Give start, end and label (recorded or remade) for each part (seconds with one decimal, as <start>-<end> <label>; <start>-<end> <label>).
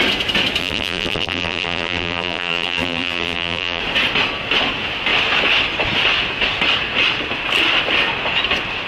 0.0-0.6 recorded; 0.6-3.8 remade; 3.8-8.9 recorded